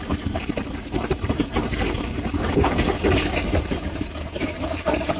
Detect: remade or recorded remade